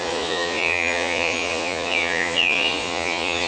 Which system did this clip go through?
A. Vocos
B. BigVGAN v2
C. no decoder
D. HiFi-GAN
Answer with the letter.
A